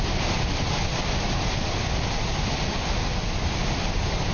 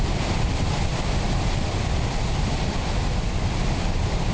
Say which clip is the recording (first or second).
first